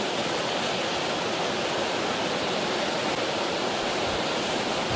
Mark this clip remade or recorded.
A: recorded